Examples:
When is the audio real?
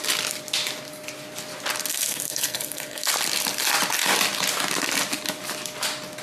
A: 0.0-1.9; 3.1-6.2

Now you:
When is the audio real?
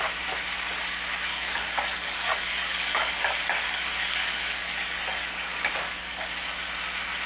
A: 0.0-1.3; 5.7-7.3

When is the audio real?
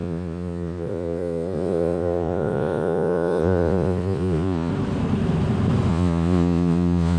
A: 4.7-5.9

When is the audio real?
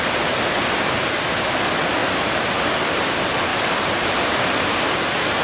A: 0.0-2.0; 2.5-3.5; 5.0-5.4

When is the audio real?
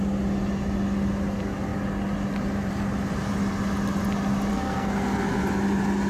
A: 0.0-4.5; 5.4-6.1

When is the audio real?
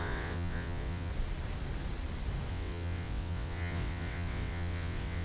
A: 1.1-2.5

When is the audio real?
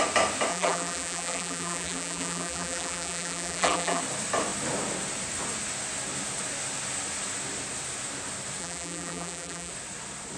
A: 0.0-0.5; 4.0-8.6; 9.7-10.4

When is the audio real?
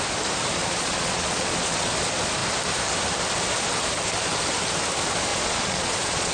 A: 0.0-0.6; 1.9-5.3